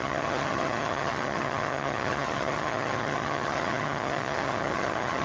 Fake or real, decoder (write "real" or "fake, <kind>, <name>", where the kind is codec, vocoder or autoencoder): fake, vocoder, HiFi-GAN